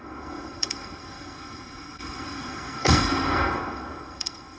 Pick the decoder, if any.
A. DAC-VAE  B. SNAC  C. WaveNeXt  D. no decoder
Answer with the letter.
B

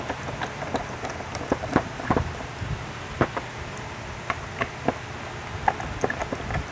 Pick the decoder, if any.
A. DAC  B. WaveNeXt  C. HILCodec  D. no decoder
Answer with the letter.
D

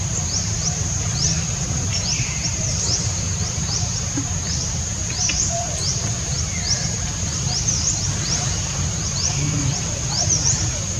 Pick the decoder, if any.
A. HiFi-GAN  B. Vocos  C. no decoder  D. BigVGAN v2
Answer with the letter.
D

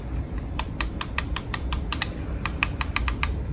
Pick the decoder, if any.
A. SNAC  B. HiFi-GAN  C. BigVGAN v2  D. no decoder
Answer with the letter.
C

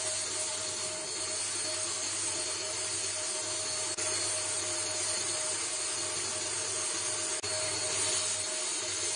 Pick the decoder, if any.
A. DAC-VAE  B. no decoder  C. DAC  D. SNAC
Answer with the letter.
B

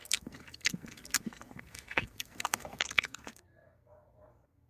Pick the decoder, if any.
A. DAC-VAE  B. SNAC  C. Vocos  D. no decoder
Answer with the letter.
B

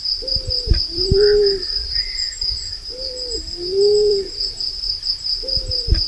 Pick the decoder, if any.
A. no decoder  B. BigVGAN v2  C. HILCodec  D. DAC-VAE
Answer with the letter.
B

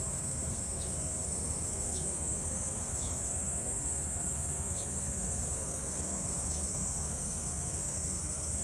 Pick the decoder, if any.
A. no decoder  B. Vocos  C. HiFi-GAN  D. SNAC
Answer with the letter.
D